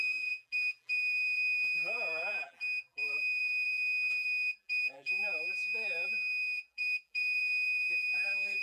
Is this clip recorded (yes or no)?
no